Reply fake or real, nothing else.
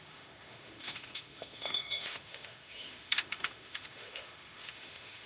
fake